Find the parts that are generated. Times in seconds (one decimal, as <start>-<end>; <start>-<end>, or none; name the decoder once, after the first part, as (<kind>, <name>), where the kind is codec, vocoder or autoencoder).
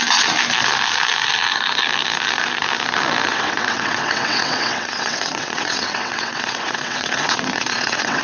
3.3-8.2 (vocoder, WaveNeXt)